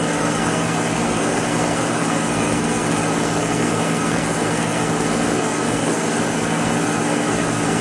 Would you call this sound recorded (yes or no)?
no